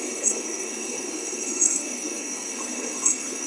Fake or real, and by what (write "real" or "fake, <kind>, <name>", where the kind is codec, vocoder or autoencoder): fake, codec, SNAC